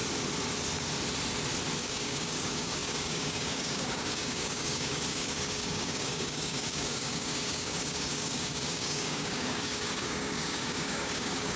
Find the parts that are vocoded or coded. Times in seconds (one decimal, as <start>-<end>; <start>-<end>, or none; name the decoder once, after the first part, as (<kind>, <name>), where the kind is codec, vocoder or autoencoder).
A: 1.8-11.6 (codec, DAC)